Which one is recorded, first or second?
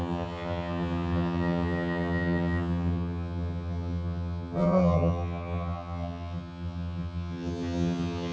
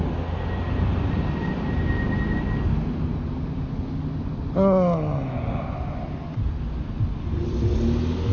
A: second